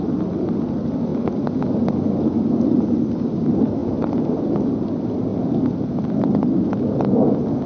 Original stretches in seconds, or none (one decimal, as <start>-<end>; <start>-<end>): 1.1-1.7; 3.8-4.4; 5.3-7.2